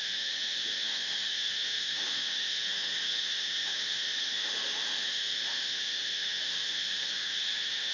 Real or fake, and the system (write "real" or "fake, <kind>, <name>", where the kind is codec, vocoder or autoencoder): fake, autoencoder, DAC-VAE